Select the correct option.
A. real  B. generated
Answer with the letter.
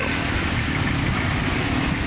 A